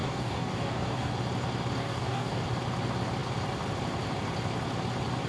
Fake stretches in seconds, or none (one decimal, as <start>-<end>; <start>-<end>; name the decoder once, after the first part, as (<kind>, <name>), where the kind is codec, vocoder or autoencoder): 0.0-1.1 (codec, DAC); 1.8-2.4